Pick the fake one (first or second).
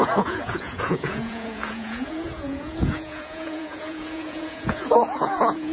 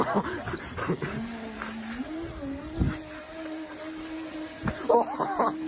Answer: first